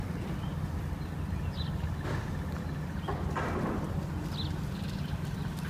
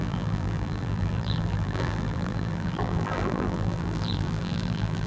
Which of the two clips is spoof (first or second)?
second